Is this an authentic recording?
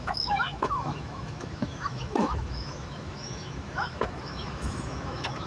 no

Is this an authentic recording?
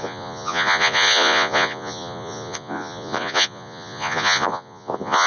no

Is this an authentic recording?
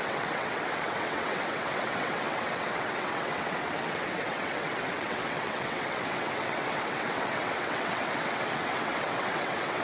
no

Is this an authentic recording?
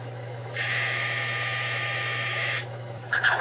no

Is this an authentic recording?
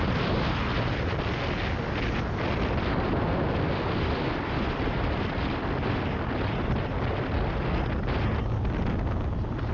yes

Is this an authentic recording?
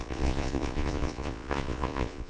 no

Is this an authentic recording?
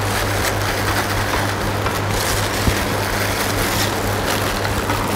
yes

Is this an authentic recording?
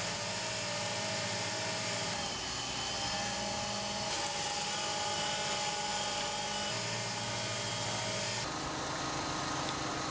yes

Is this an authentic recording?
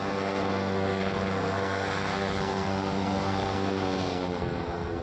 no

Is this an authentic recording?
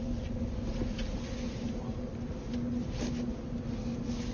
yes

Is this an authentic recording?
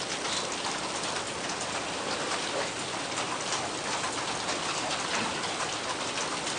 no